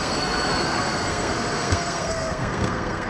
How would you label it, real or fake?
fake